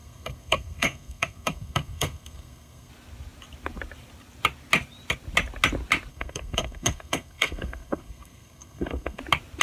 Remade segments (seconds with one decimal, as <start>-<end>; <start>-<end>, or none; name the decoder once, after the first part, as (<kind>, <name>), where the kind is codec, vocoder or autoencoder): 0.0-2.9 (codec, SNAC); 6.1-9.2